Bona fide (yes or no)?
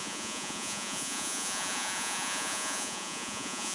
no